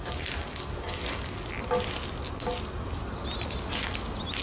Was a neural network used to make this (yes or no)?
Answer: no